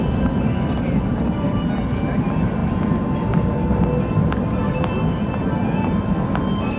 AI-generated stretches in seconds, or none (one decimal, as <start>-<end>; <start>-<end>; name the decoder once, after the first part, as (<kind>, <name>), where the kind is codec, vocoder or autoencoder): none